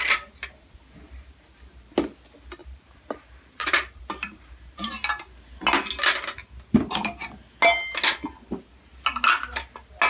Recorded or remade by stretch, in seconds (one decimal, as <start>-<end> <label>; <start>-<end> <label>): 0.0-2.6 recorded; 2.6-4.9 remade; 4.9-10.1 recorded